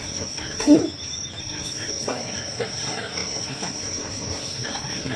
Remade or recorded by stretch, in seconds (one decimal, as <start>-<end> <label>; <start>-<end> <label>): 0.0-0.8 remade; 0.8-1.4 recorded; 1.4-5.2 remade

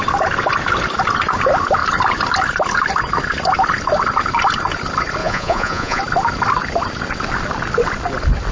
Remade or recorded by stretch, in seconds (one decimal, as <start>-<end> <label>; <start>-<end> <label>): 0.0-5.2 recorded; 5.2-6.0 remade; 6.0-8.5 recorded

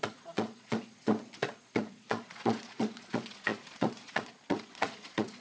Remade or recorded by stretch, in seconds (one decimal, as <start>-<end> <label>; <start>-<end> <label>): 0.0-5.4 remade

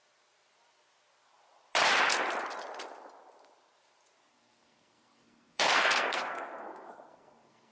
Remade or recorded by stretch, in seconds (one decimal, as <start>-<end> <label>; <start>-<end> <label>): 0.0-4.3 recorded; 4.3-7.7 remade

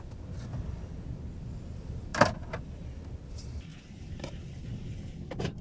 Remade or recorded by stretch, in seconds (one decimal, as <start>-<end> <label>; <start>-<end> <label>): 0.0-2.1 recorded; 2.1-3.0 remade; 3.0-3.7 recorded; 3.7-4.6 remade; 4.6-5.6 recorded

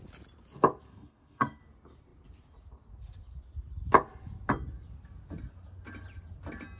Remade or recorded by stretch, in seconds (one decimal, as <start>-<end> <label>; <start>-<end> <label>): 0.0-0.9 recorded; 0.9-1.6 remade; 1.6-6.8 recorded